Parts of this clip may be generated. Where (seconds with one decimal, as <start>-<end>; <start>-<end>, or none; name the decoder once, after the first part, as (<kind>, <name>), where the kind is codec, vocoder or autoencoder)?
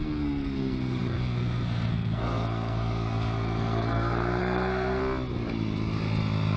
0.0-5.0 (codec, SNAC)